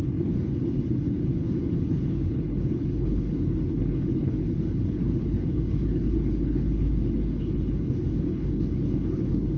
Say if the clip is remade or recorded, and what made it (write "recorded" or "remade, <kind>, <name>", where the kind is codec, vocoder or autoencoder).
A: remade, codec, HILCodec